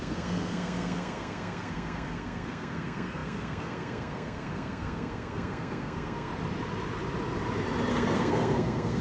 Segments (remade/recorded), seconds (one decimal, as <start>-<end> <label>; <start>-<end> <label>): 0.0-6.3 remade; 6.3-7.9 recorded; 7.9-9.0 remade